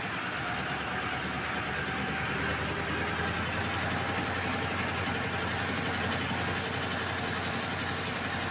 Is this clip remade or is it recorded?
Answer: recorded